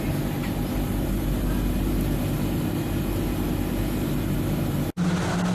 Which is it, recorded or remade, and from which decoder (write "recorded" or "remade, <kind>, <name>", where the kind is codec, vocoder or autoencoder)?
recorded